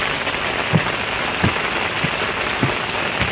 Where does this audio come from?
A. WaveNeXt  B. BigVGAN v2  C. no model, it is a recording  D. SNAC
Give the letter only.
C